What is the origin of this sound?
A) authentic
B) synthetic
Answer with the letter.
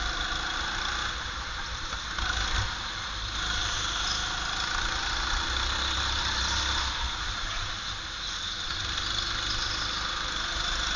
A